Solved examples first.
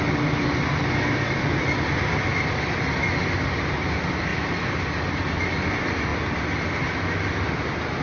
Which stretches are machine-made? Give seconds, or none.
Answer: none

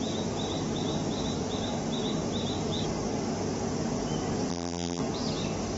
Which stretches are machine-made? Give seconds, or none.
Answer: 4.5-5.0 (vocoder, BigVGAN v2)

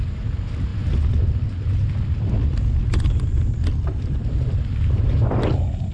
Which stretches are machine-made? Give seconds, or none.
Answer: none

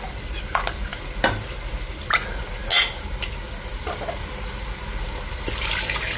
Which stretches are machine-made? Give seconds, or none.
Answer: none

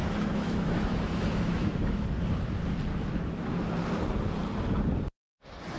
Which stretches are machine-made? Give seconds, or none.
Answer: 0.0-2.2 (autoencoder, DAC-VAE); 2.9-3.6